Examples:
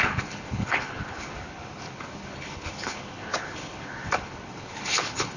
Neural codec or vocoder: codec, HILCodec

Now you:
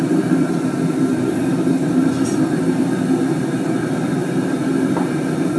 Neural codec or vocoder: vocoder, BigVGAN v2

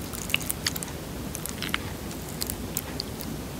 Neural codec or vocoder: none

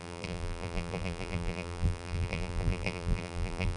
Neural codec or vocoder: vocoder, BigVGAN v2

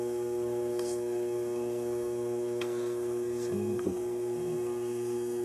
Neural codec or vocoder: codec, SNAC